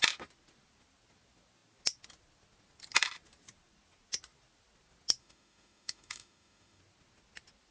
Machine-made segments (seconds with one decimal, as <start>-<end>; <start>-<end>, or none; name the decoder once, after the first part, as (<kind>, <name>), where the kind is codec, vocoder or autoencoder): 5.2-6.8 (autoencoder, DAC-VAE)